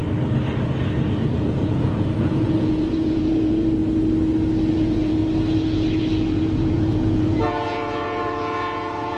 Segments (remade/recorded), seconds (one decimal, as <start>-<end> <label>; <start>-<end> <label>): 0.0-1.2 recorded; 1.2-3.8 remade; 3.8-4.7 recorded; 4.7-5.2 remade; 5.2-6.0 recorded; 6.0-9.2 remade